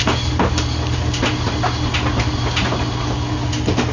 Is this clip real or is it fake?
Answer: real